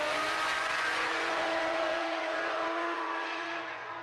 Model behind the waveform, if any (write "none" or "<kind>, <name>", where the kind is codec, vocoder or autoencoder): vocoder, Vocos